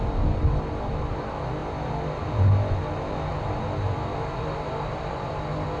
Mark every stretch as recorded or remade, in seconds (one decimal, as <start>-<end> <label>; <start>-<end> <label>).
0.0-1.6 recorded; 1.6-2.3 remade; 2.3-3.3 recorded; 3.3-5.3 remade; 5.3-5.8 recorded